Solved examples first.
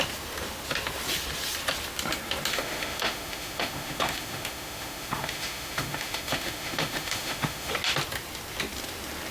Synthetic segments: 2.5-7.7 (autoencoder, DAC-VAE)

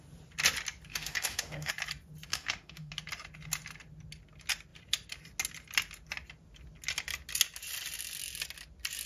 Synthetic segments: 0.9-1.7 (autoencoder, DAC-VAE); 2.3-2.9

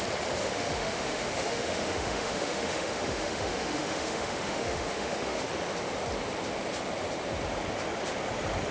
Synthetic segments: 0.4-5.4 (autoencoder, DAC-VAE)